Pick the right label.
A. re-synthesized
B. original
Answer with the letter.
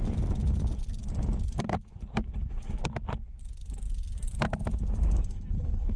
A